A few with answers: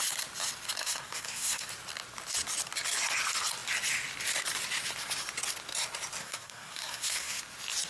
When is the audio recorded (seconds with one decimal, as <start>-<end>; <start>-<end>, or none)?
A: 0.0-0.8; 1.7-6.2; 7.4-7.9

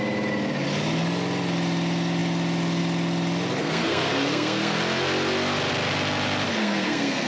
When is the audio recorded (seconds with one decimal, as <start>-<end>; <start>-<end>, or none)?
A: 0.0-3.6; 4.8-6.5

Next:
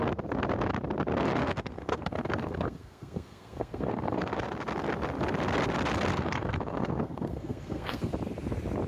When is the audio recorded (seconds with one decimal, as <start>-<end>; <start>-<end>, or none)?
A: 0.0-1.4; 4.3-6.1; 8.1-8.9

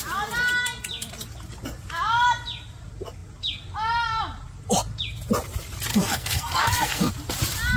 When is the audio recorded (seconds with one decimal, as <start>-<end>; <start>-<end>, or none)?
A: 0.0-5.9; 7.1-7.8

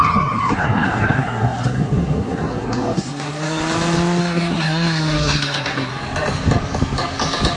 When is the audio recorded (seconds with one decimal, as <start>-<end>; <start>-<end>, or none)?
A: 3.6-4.2; 5.9-7.6